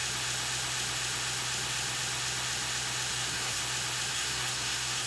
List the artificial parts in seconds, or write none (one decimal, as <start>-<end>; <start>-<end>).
3.1-3.6; 4.1-5.1